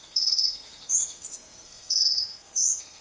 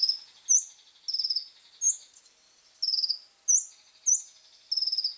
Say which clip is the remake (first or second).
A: first